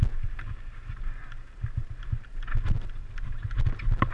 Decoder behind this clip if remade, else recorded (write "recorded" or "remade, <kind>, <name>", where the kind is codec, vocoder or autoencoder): recorded